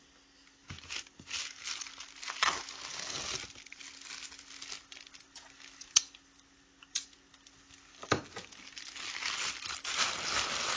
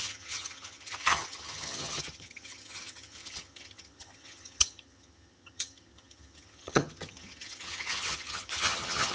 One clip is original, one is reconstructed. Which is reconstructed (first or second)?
second